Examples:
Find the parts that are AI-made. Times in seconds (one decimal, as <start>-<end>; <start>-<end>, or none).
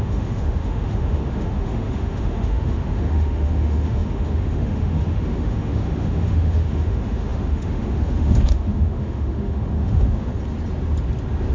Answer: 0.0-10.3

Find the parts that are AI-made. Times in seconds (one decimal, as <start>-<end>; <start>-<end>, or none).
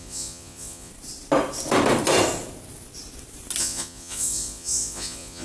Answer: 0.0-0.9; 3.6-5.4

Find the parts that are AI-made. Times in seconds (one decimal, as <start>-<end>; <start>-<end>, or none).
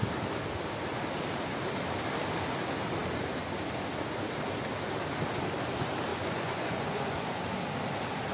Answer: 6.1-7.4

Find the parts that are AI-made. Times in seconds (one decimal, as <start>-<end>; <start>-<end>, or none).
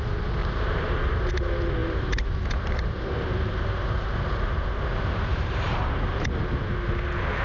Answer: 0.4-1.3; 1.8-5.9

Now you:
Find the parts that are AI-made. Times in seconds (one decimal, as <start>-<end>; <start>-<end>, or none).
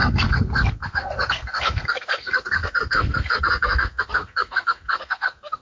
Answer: 0.0-5.6